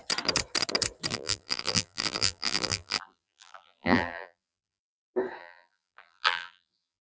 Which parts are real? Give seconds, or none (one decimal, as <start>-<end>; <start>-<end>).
0.0-1.1; 5.0-5.4